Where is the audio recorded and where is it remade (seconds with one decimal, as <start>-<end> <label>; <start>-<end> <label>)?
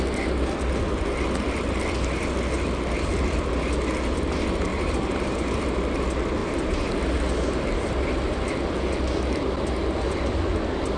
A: 0.0-4.7 recorded; 4.7-5.5 remade; 5.5-6.4 recorded; 6.4-6.9 remade; 6.9-11.0 recorded